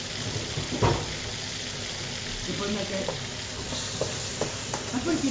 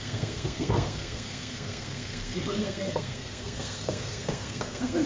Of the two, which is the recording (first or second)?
first